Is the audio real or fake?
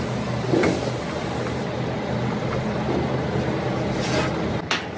real